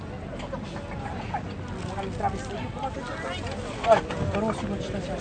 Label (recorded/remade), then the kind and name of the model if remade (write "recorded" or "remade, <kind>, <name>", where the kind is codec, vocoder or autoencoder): recorded